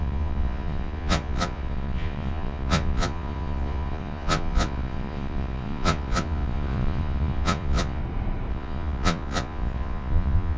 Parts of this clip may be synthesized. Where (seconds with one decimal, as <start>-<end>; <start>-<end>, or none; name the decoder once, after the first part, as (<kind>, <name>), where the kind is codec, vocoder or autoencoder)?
0.0-8.0 (vocoder, Vocos); 8.5-10.6